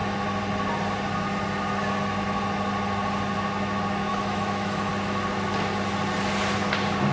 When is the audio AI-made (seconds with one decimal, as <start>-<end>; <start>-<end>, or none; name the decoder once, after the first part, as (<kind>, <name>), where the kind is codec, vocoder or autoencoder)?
4.1-4.9 (autoencoder, DAC-VAE)